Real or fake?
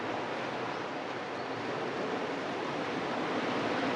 real